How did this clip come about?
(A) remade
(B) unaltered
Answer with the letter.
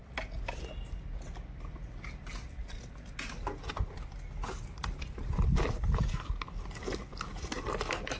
B